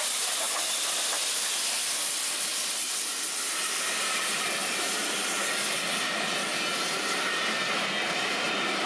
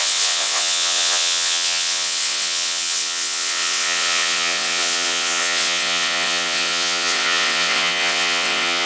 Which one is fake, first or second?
second